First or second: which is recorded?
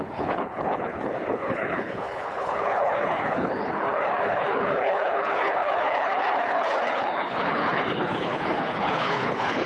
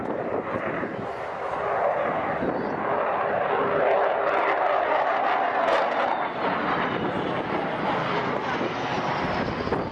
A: second